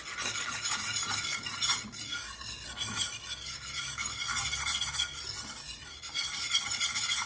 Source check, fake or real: real